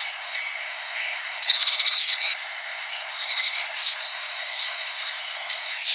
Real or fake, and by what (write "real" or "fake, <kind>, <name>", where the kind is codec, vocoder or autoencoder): fake, codec, SNAC